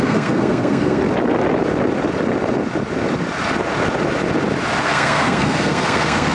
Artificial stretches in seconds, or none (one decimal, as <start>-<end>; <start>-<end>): 0.0-1.0; 4.8-6.3